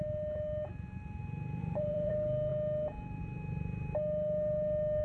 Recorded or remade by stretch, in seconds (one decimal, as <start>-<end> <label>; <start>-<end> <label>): 0.0-1.6 recorded; 1.6-2.1 remade; 2.1-5.0 recorded